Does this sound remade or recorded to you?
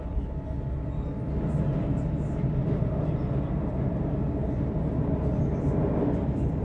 recorded